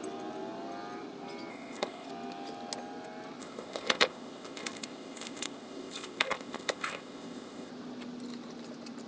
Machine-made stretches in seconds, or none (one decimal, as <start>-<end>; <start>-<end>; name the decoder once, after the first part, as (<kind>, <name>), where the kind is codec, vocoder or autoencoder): 1.5-2.1 (codec, ZipCodec); 3.4-7.7